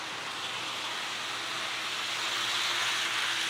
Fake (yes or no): no